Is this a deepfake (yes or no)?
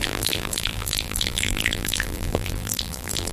yes